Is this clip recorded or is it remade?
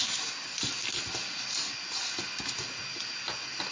recorded